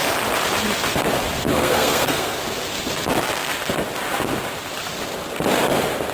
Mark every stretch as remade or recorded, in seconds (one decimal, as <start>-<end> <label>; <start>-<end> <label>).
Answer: 0.0-1.6 recorded; 1.6-2.4 remade; 2.4-6.1 recorded